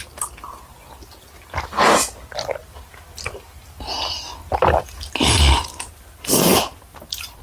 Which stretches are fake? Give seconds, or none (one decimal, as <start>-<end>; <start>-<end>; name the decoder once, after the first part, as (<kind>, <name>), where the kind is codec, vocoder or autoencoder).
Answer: 2.6-5.1 (vocoder, BigVGAN v2); 6.5-7.4